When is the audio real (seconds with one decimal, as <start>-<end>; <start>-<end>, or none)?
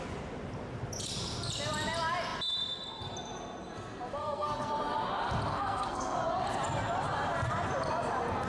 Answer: 0.0-4.2; 4.7-5.5; 6.2-8.5